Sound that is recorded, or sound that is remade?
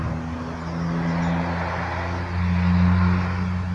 recorded